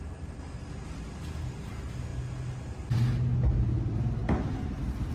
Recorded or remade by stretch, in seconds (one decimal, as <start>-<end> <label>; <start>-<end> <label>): 0.0-2.1 remade; 2.1-3.7 recorded; 3.7-4.2 remade; 4.2-5.1 recorded